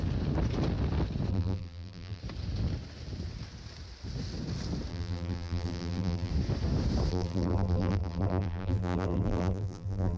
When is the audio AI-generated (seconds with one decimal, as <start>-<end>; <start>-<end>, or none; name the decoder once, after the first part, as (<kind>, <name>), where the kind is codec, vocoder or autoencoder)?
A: 1.3-2.2 (vocoder, BigVGAN v2); 4.9-6.3; 7.1-10.2